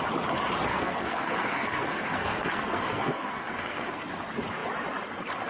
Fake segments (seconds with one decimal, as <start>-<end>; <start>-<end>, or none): 0.7-4.0